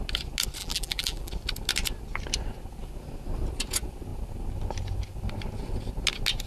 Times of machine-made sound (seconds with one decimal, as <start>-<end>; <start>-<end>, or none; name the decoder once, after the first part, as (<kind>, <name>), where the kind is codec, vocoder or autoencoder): 0.6-1.3 (vocoder, BigVGAN v2)

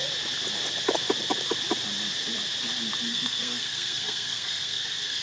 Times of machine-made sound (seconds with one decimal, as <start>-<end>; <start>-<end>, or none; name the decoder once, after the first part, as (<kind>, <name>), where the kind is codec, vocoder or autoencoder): 3.1-5.2 (codec, SNAC)

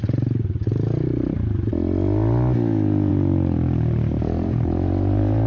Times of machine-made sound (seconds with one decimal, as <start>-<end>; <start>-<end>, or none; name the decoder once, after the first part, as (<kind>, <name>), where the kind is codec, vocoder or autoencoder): 3.1-5.5 (vocoder, BigVGAN v2)

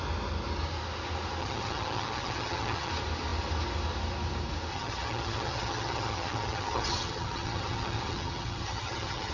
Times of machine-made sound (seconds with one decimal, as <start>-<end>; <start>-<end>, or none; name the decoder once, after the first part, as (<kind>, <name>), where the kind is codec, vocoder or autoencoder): 1.4-2.9 (vocoder, HiFi-GAN); 4.7-9.3